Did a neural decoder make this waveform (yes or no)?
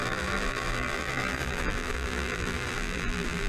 yes